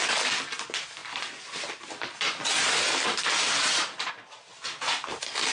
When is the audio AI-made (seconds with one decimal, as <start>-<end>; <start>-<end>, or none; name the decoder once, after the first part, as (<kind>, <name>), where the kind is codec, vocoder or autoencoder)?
none